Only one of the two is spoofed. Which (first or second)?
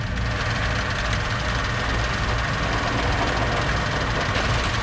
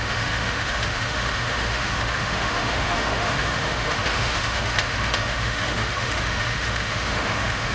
second